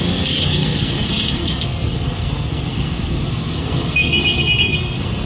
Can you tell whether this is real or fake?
fake